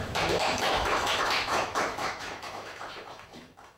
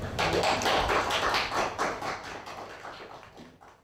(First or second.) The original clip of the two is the second